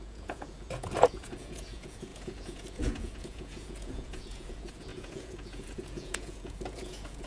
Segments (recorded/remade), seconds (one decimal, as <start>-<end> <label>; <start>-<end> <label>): 0.0-7.3 remade